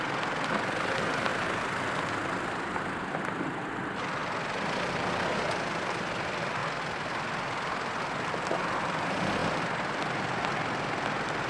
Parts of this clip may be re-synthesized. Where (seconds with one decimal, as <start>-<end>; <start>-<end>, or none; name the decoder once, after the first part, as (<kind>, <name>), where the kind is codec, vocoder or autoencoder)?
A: 0.0-1.3 (vocoder, BigVGAN v2); 3.2-6.6; 8.0-11.5